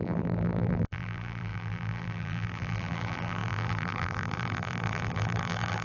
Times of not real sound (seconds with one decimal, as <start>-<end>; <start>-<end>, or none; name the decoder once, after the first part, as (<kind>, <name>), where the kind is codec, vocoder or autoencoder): 0.0-5.8 (vocoder, BigVGAN v2)